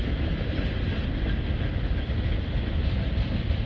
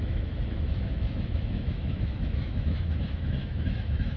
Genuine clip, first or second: first